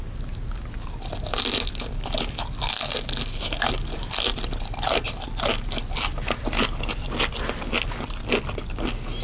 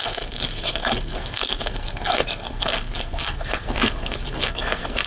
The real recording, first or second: first